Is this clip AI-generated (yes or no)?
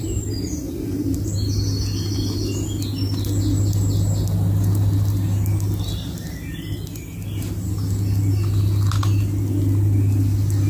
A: no